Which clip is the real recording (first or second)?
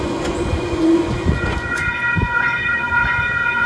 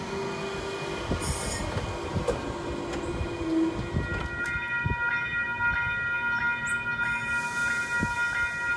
second